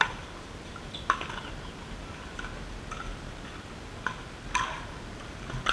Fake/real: real